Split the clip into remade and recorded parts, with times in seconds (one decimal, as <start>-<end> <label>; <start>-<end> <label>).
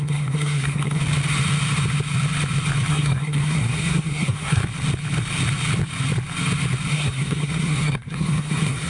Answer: 0.0-1.0 remade; 1.0-2.9 recorded; 2.9-4.6 remade; 4.6-6.9 recorded; 6.9-8.9 remade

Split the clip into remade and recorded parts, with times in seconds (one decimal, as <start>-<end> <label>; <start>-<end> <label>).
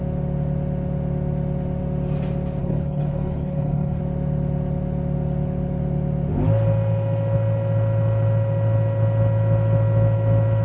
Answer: 0.0-2.6 recorded; 2.6-4.0 remade; 4.0-10.6 recorded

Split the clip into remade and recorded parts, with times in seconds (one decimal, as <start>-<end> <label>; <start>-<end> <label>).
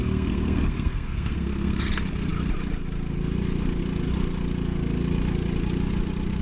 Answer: 0.0-1.9 remade; 1.9-6.4 recorded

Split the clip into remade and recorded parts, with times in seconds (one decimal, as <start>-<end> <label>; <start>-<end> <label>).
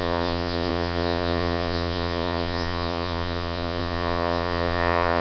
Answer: 0.0-5.2 remade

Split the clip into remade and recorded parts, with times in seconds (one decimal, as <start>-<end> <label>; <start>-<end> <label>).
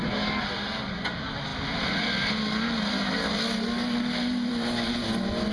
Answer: 0.0-5.5 recorded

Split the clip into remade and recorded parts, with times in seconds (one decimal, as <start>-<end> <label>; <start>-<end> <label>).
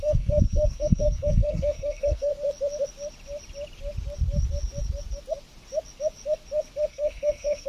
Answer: 0.0-2.3 remade; 2.3-6.9 recorded; 6.9-7.7 remade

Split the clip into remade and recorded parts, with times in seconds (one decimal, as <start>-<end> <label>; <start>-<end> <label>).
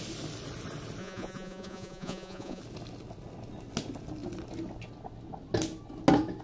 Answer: 0.0-1.0 recorded; 1.0-2.6 remade; 2.6-6.4 recorded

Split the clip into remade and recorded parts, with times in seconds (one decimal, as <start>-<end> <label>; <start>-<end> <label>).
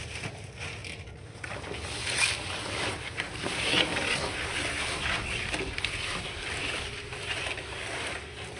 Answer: 0.0-8.6 recorded